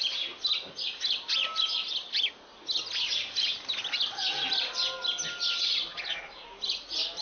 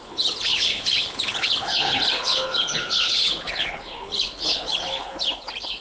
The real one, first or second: first